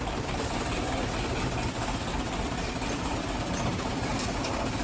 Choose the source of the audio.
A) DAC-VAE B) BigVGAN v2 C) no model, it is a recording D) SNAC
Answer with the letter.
C